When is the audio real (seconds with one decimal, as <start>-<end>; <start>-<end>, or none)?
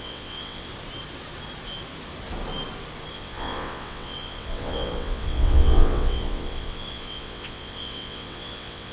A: 0.7-3.1